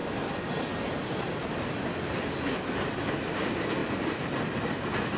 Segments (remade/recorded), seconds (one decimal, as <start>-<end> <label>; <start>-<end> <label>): 0.0-5.2 recorded